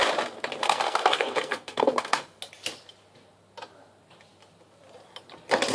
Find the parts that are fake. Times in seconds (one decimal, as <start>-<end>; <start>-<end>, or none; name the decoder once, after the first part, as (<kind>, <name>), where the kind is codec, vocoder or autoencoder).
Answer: 0.6-2.4 (codec, SNAC)